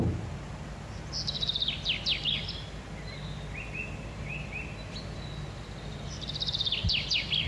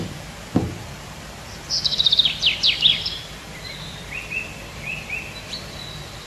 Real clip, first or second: first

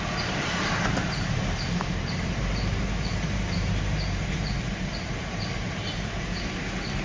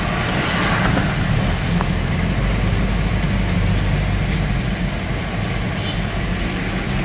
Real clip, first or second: second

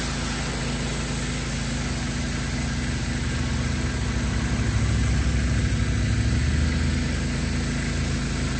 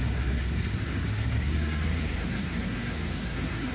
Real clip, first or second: first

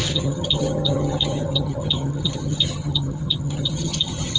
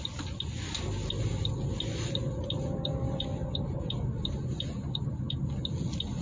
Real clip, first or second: second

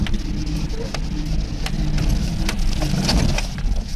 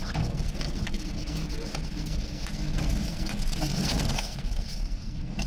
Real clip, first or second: first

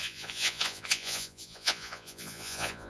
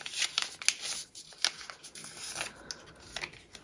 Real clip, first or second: second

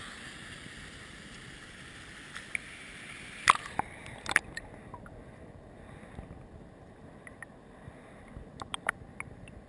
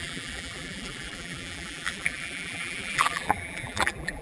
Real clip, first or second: first